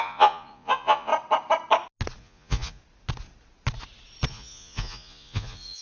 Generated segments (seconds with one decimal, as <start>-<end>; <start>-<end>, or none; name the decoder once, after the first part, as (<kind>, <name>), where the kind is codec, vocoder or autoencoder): 0.0-1.1 (vocoder, Vocos); 2.2-2.8; 4.3-5.8